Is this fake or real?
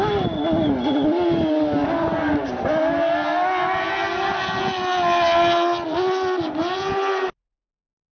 real